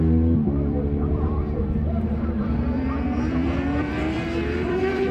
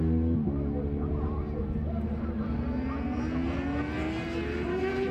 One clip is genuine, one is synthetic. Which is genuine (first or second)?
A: second